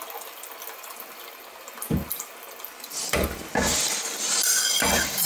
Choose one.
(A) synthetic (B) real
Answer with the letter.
B